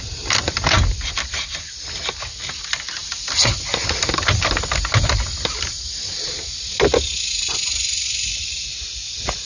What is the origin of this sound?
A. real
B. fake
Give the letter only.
A